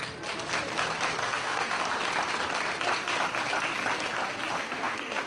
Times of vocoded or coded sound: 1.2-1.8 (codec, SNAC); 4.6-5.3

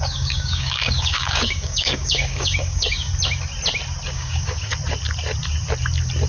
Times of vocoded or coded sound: 0.0-3.1 (codec, DAC); 4.1-4.7